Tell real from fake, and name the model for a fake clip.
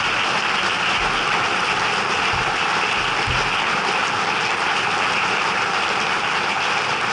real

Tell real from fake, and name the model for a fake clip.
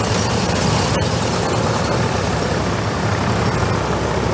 real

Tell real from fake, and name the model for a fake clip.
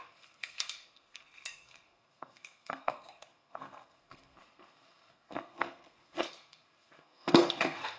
fake, codec, SNAC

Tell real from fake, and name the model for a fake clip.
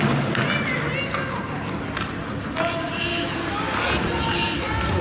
real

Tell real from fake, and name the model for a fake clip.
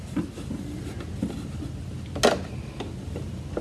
real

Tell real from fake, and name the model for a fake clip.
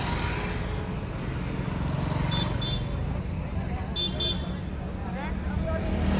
real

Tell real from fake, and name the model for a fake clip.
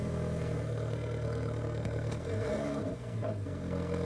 fake, codec, SNAC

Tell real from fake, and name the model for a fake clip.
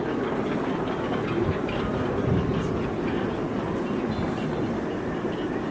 real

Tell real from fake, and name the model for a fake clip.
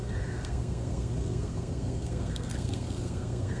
fake, codec, SNAC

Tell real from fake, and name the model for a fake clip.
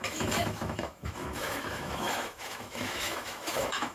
fake, autoencoder, DAC-VAE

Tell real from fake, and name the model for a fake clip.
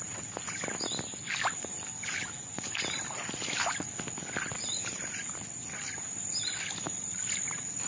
real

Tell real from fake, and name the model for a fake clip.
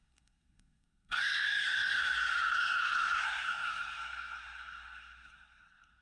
fake, codec, SNAC